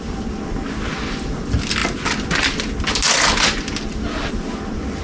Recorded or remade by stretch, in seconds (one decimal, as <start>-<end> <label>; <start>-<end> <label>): 0.0-5.0 recorded